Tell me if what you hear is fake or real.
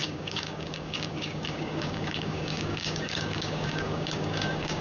fake